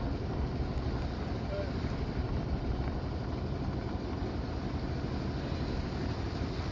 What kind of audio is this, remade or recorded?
recorded